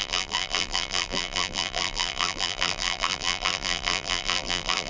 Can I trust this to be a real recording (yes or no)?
no